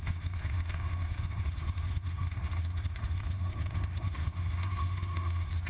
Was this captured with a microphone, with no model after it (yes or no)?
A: no